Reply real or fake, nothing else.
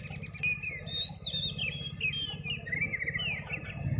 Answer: real